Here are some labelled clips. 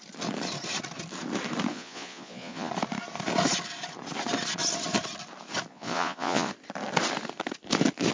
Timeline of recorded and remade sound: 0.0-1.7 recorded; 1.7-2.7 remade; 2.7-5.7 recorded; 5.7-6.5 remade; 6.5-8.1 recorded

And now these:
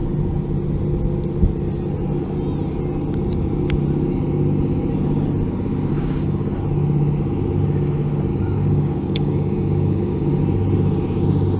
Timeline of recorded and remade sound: 0.0-5.9 recorded; 5.9-6.6 remade; 6.6-8.3 recorded; 8.3-10.4 remade; 10.4-11.6 recorded

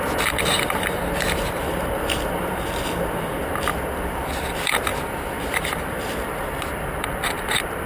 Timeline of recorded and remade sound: 0.0-7.9 remade

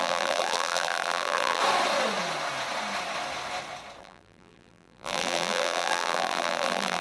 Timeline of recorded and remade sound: 0.0-1.6 remade; 1.6-4.0 recorded; 4.0-7.0 remade

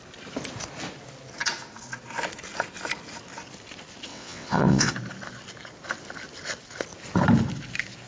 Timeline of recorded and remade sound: 0.0-4.1 recorded; 4.1-4.9 remade; 4.9-8.1 recorded

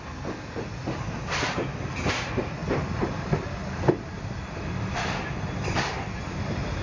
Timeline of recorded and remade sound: 0.0-6.8 recorded

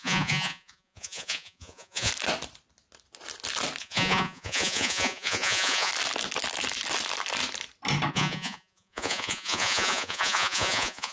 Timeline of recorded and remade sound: 0.0-2.1 remade; 2.1-3.8 recorded; 3.8-5.9 remade; 5.9-8.1 recorded; 8.1-11.1 remade